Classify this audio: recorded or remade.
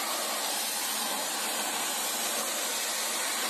recorded